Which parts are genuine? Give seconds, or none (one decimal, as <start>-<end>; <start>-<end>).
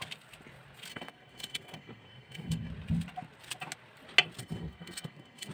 0.0-0.9; 2.7-4.4